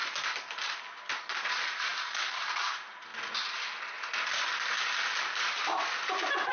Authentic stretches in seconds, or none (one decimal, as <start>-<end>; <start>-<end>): 0.0-1.2; 3.1-5.5